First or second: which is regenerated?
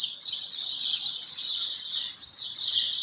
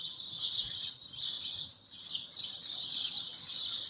second